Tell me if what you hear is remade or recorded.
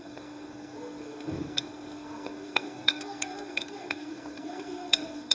remade